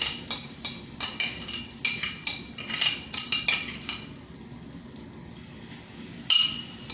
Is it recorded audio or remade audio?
recorded